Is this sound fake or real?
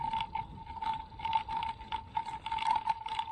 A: real